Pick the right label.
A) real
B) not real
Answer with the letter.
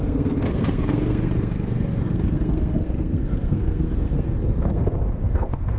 B